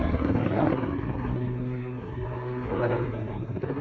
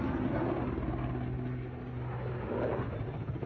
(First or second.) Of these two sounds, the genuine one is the second